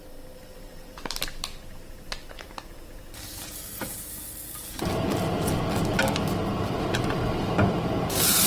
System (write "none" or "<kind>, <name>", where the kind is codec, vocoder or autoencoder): none